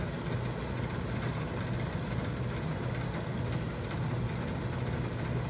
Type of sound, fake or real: real